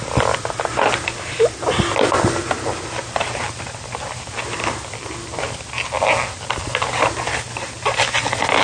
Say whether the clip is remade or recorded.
recorded